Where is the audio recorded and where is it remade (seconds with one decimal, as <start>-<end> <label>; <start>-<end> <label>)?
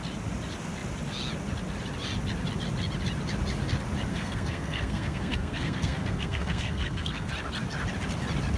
0.0-4.1 recorded; 4.1-7.3 remade; 7.3-8.6 recorded